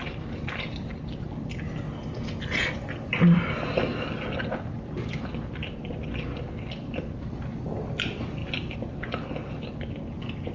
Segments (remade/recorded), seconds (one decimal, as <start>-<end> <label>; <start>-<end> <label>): 0.0-10.5 recorded